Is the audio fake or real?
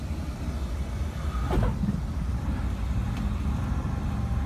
real